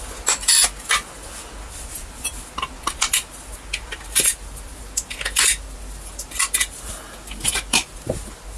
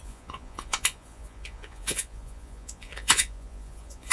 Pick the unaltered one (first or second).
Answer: first